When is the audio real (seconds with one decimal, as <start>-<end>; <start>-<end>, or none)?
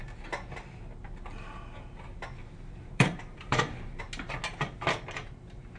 0.0-2.4; 4.0-5.8